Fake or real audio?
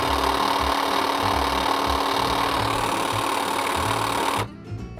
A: real